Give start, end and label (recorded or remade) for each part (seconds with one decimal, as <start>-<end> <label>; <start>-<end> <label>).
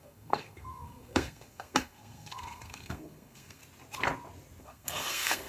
0.0-3.6 remade; 3.6-4.6 recorded; 4.6-5.5 remade